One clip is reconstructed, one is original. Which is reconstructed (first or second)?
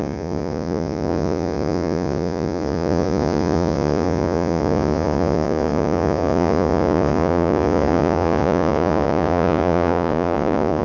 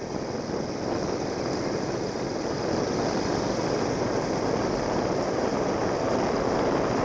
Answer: first